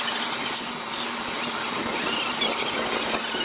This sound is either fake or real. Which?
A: real